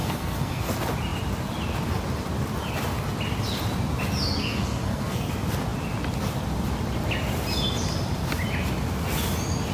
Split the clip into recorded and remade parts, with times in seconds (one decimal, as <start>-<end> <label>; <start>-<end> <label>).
0.0-0.7 remade; 0.7-4.4 recorded; 4.4-5.3 remade; 5.3-9.7 recorded